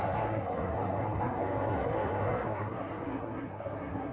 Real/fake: fake